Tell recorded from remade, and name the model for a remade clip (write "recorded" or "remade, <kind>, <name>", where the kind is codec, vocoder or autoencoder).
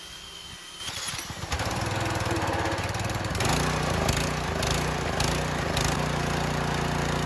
recorded